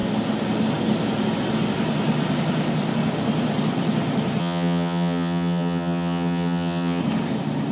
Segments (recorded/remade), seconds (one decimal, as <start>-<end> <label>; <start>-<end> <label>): 0.0-4.4 recorded; 4.4-7.0 remade; 7.0-7.7 recorded